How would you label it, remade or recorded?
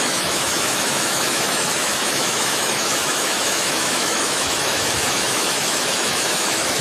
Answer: remade